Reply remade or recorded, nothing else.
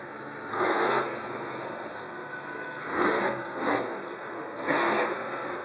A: remade